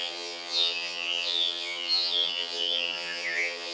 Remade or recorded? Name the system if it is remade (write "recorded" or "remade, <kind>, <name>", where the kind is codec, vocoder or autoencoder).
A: remade, vocoder, HiFi-GAN